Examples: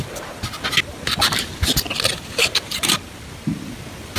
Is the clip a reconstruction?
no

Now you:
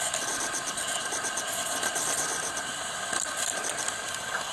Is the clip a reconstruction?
no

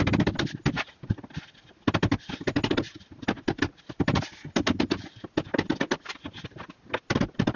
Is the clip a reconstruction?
no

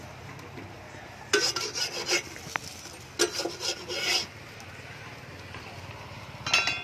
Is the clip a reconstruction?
no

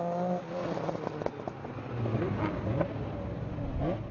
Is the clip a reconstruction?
no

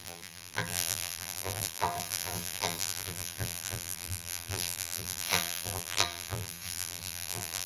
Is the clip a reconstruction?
yes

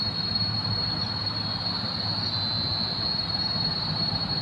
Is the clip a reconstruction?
no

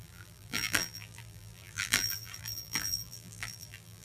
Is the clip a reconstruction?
yes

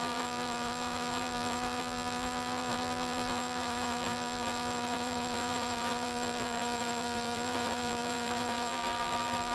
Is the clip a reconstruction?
yes